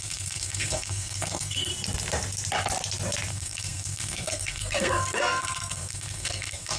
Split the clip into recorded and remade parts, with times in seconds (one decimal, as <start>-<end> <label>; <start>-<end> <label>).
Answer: 0.0-1.7 remade; 1.7-3.3 recorded; 3.3-6.8 remade